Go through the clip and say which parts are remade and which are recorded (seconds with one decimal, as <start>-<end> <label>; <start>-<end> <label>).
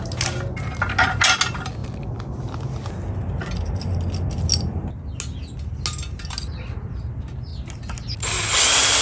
0.0-9.0 recorded